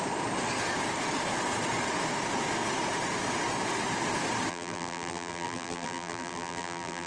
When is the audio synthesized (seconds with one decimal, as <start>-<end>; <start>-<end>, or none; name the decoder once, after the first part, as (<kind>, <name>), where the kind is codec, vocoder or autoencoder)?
4.5-7.1 (vocoder, BigVGAN v2)